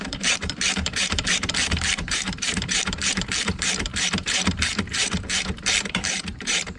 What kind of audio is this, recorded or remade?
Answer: remade